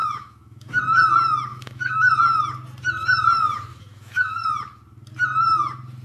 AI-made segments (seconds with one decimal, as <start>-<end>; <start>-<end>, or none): 0.0-0.8; 1.5-2.1; 3.7-4.4